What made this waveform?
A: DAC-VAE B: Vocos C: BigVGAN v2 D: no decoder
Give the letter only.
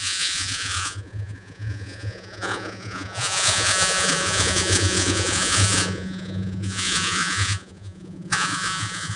B